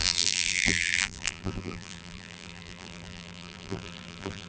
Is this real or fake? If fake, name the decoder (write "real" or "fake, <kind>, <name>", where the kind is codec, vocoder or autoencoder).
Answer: fake, vocoder, BigVGAN v2